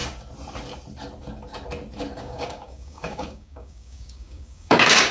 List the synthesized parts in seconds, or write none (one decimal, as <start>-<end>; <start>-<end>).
2.2-5.1